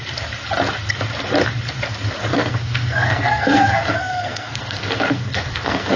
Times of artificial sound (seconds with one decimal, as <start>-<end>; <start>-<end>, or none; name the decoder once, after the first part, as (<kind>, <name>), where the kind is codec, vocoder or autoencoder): 2.3-6.0 (codec, SNAC)